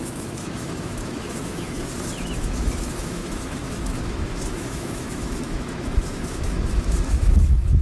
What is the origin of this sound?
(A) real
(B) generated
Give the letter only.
B